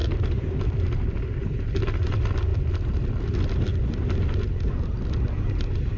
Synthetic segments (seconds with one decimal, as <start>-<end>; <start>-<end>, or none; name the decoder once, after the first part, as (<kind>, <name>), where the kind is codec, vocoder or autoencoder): 0.0-0.9 (vocoder, BigVGAN v2); 1.4-2.1